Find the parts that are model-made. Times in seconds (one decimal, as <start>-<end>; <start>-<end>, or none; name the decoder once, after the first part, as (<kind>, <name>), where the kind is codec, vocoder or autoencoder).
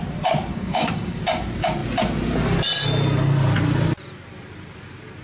0.5-1.2 (codec, DAC)